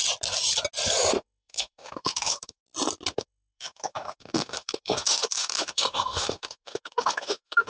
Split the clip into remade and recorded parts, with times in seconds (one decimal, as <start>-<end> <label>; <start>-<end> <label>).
0.0-1.1 recorded; 1.1-2.6 remade; 2.6-3.1 recorded; 3.1-7.7 remade